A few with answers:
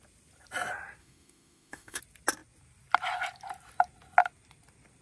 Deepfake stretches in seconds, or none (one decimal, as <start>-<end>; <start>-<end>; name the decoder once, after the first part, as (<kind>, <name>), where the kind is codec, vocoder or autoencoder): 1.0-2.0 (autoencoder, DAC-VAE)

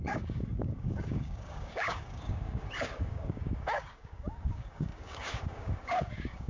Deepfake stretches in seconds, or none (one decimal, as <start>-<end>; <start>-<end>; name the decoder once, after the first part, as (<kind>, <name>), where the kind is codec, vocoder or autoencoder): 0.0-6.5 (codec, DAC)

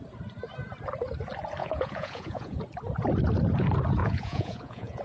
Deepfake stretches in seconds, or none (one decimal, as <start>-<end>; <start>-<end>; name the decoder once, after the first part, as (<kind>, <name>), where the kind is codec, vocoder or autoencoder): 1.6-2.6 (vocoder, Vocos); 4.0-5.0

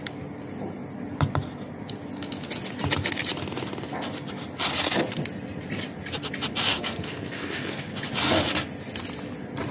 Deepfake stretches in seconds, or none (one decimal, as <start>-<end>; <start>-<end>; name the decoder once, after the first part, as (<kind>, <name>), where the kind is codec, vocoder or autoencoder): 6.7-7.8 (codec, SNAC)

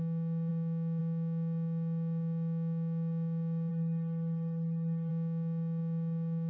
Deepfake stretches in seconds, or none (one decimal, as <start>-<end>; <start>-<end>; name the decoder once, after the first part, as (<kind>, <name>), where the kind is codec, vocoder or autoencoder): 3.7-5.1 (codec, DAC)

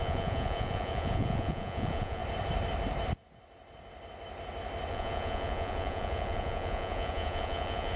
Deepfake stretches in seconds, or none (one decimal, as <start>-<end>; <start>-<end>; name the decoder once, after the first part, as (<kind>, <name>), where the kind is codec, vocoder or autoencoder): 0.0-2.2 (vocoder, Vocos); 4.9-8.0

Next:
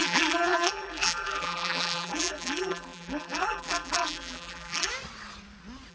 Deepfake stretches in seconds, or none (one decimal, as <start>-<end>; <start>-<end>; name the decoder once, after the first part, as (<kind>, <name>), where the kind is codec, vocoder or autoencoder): 0.0-4.9 (vocoder, BigVGAN v2)